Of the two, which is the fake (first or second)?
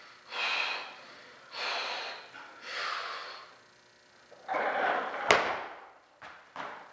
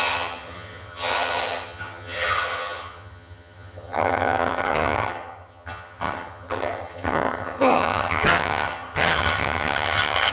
second